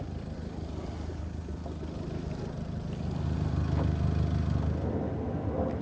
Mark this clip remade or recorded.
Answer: recorded